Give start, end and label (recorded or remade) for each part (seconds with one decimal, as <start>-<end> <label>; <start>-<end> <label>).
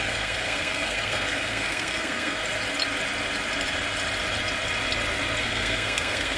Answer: 0.0-2.4 remade; 2.4-5.4 recorded; 5.4-6.4 remade